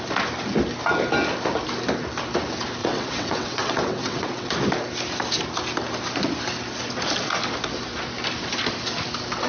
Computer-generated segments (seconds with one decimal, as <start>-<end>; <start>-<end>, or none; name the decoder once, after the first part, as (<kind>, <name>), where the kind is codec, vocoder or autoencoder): 2.8-4.5 (vocoder, WaveNeXt)